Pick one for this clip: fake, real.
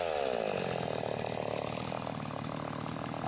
real